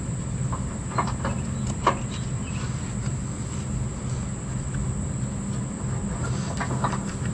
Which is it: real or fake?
real